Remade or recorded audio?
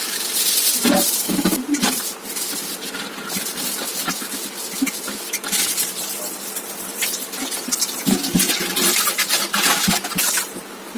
remade